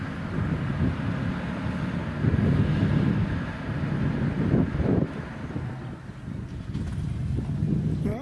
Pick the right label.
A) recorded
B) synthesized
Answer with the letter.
A